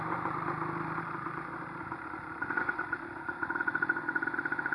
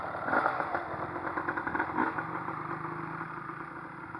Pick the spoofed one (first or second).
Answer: first